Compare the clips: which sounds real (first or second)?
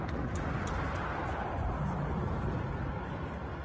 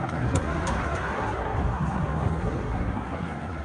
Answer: first